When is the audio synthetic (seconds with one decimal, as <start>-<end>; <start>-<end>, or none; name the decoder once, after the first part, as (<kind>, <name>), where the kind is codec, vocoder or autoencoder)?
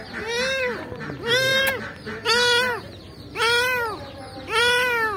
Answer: none